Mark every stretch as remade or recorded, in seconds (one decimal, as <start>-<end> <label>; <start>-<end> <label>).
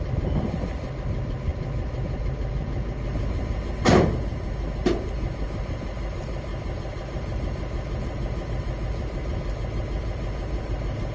0.0-11.1 recorded